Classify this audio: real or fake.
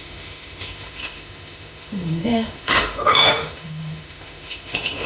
fake